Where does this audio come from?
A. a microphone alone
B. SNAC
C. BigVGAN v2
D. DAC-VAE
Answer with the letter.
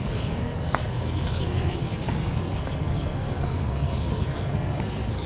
B